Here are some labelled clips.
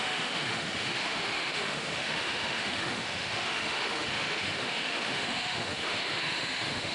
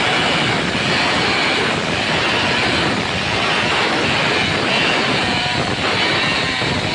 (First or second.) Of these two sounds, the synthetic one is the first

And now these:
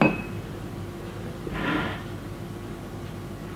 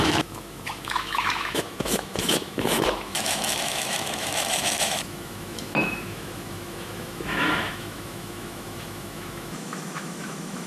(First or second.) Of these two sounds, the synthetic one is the second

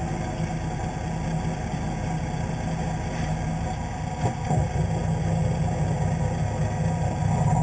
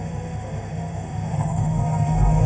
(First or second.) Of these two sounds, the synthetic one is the second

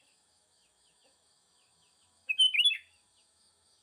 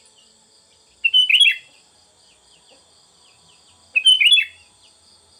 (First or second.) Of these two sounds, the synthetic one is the first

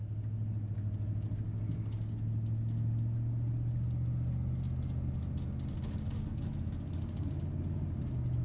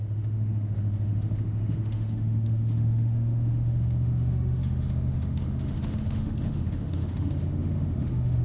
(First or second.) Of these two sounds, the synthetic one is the second